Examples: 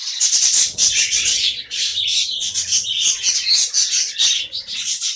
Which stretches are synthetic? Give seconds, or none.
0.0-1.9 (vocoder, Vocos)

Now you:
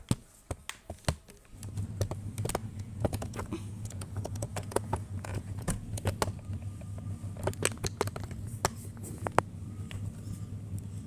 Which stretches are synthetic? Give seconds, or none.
2.6-6.0 (vocoder, Vocos)